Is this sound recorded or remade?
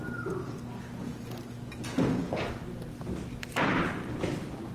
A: recorded